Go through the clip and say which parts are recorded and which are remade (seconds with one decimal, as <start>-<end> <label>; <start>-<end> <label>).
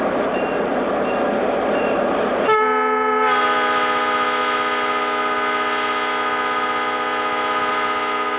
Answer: 0.0-8.4 recorded